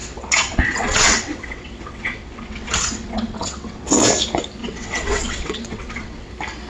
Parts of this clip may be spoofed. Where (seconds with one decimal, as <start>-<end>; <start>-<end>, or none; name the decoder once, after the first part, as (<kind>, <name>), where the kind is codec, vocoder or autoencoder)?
0.0-3.9 (vocoder, WaveNeXt); 4.6-6.3